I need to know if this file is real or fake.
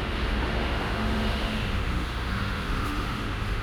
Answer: fake